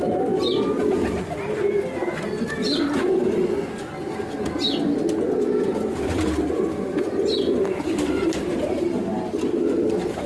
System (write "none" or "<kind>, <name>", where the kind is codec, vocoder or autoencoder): none